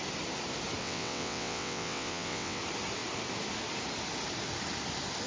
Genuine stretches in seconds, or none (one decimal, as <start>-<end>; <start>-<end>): 0.0-0.8; 2.6-5.3